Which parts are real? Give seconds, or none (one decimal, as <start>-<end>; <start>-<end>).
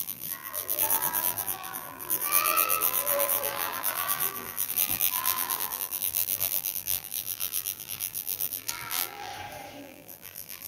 9.3-9.8